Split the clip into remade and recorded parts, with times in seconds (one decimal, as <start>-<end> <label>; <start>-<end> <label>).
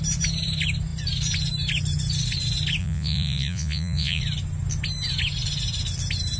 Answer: 0.0-2.8 recorded; 2.8-4.2 remade; 4.2-6.4 recorded